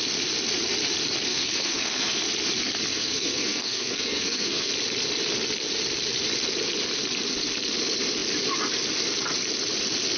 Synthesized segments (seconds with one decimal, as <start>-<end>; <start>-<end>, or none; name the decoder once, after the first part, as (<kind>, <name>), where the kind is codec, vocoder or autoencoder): 1.3-2.2 (codec, SNAC); 2.9-4.7